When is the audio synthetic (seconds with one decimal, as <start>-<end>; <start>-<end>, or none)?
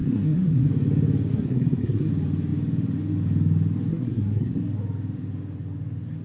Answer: 0.0-0.7; 1.3-2.1; 3.9-4.6